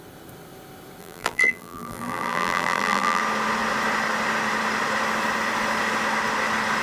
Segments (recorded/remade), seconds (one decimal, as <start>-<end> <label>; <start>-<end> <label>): 0.0-1.0 recorded; 1.0-3.2 remade; 3.2-6.8 recorded

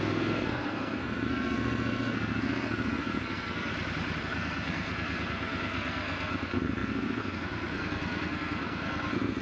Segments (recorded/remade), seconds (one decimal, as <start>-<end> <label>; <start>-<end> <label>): 0.0-3.7 remade; 3.7-4.2 recorded; 4.2-9.4 remade

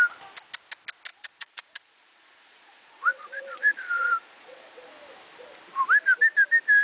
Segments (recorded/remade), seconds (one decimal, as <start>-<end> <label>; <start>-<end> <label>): 0.0-1.1 recorded; 1.1-4.9 remade; 4.9-6.8 recorded

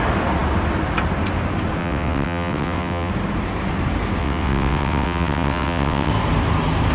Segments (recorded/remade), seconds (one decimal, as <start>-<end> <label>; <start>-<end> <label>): 0.0-1.8 recorded; 1.8-3.1 remade; 3.1-4.2 recorded; 4.2-6.1 remade; 6.1-6.9 recorded

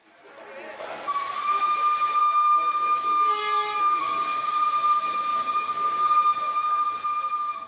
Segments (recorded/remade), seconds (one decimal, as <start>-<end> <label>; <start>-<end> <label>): 0.0-2.2 recorded; 2.2-4.6 remade; 4.6-5.3 recorded; 5.3-6.7 remade; 6.7-7.7 recorded

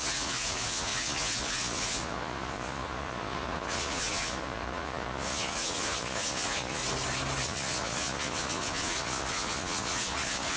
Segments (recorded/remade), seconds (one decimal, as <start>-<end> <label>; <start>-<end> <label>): 0.0-6.8 remade; 6.8-7.4 recorded; 7.4-10.6 remade

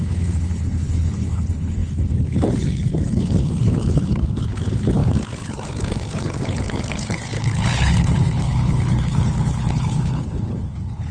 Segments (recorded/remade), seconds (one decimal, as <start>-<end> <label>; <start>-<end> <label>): 0.0-11.1 remade